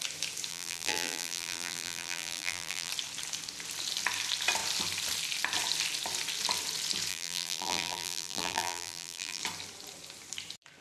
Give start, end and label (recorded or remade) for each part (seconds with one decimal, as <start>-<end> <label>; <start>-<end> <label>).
0.0-0.5 recorded; 0.5-2.9 remade; 2.9-7.1 recorded; 7.1-9.4 remade; 9.4-10.8 recorded